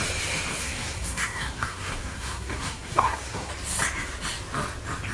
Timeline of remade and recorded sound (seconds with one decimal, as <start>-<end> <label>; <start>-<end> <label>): 0.0-0.6 recorded; 0.6-3.5 remade; 3.5-5.1 recorded